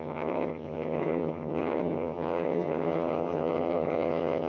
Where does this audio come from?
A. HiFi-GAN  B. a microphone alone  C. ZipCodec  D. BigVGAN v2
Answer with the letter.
A